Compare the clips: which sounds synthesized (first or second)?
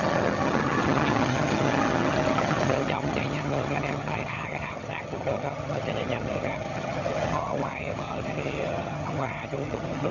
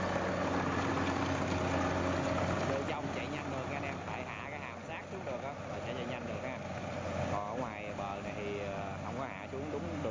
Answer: first